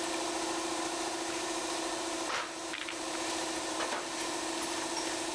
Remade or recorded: remade